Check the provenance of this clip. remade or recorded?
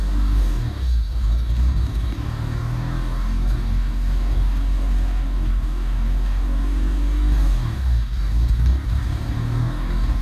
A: remade